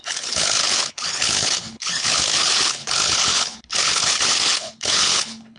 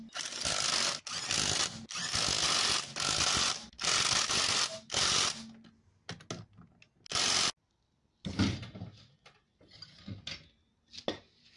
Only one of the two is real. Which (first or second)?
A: second